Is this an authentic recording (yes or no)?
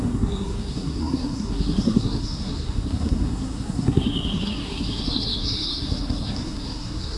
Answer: no